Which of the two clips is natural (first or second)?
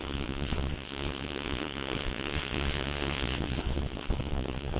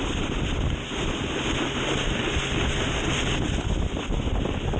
second